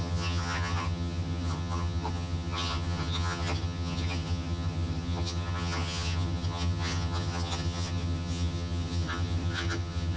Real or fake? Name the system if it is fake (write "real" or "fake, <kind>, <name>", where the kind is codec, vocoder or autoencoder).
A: fake, vocoder, HiFi-GAN